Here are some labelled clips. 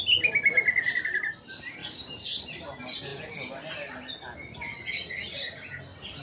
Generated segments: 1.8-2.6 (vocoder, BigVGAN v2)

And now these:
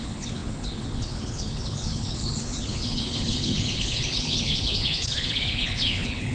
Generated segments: 0.0-6.3 (codec, HILCodec)

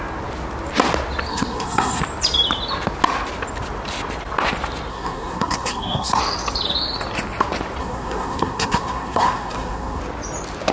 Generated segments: 1.3-2.0 (codec, SNAC); 4.9-6.2; 7.8-10.0

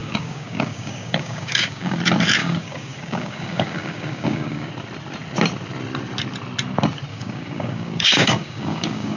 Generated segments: 0.0-2.0 (codec, DAC); 2.4-4.7; 7.1-9.2

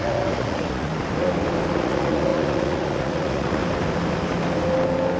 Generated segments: 0.0-0.9 (vocoder, Vocos); 1.7-3.6

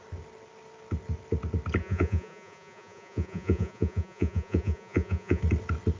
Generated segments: 1.8-5.4 (vocoder, Vocos)